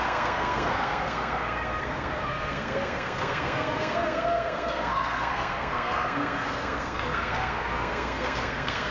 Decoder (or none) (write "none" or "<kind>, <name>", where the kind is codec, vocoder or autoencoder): codec, SNAC